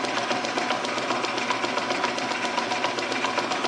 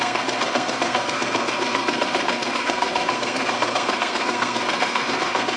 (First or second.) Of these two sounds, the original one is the first